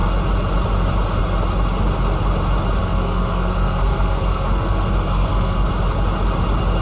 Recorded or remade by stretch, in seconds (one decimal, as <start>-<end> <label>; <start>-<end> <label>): 0.0-2.8 recorded; 2.8-5.7 remade; 5.7-6.8 recorded